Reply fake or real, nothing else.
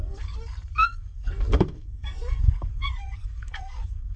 fake